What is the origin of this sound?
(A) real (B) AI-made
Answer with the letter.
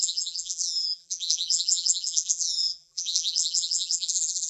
B